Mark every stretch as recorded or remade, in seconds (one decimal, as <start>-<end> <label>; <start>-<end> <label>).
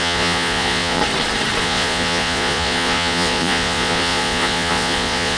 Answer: 0.0-1.0 remade; 1.0-1.6 recorded; 1.6-5.4 remade